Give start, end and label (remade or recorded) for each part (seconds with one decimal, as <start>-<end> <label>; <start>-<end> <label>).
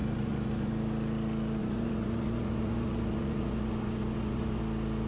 0.0-0.7 remade; 0.7-1.6 recorded; 1.6-4.6 remade; 4.6-5.1 recorded